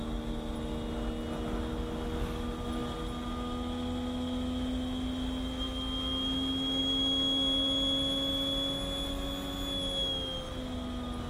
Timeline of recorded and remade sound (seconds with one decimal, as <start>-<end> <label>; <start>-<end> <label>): 0.0-11.3 recorded